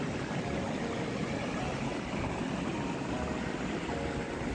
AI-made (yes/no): no